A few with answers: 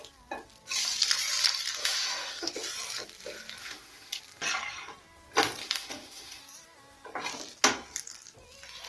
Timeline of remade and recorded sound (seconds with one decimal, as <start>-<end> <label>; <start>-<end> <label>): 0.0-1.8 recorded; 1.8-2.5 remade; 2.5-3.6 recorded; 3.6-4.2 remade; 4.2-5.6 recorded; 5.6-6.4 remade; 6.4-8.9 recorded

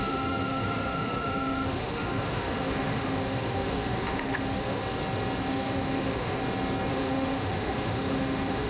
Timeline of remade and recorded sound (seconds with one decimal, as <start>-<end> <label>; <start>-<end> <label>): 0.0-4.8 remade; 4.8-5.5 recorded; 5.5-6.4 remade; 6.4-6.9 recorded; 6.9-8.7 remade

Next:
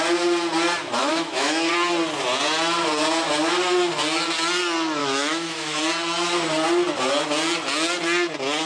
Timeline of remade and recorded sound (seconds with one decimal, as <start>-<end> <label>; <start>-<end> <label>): 0.0-1.0 recorded; 1.0-1.7 remade; 1.7-5.0 recorded; 5.0-5.8 remade; 5.8-8.7 recorded

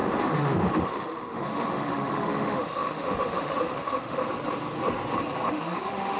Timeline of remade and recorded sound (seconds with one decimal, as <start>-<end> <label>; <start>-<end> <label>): 0.0-4.2 remade; 4.2-5.5 recorded; 5.5-6.2 remade

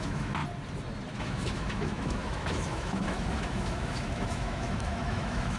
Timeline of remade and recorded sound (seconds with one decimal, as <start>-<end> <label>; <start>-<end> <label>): 0.0-0.4 remade; 0.4-1.2 recorded; 1.2-5.6 remade

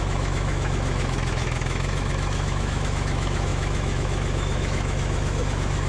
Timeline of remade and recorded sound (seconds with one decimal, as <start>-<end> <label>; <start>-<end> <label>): 0.0-5.9 remade